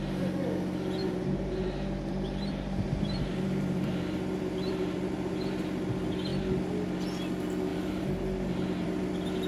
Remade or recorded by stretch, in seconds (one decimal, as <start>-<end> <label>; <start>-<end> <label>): 0.0-1.0 recorded; 1.0-5.6 remade; 5.6-7.7 recorded; 7.7-9.1 remade; 9.1-9.5 recorded

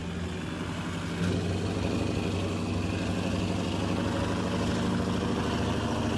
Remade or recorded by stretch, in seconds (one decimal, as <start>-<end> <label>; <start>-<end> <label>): 0.0-6.2 recorded

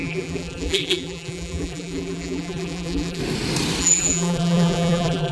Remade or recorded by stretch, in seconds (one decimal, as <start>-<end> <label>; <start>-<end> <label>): 0.0-3.2 remade; 3.2-3.8 recorded; 3.8-5.3 remade